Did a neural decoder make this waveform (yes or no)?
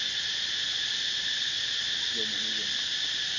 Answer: no